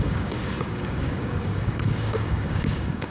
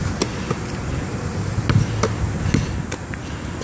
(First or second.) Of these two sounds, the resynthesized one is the first